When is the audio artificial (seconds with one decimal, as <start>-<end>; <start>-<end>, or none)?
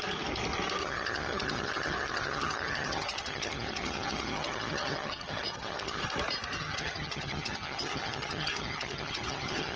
0.8-6.0; 6.6-9.8